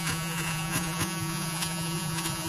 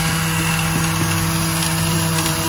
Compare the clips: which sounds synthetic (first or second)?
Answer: first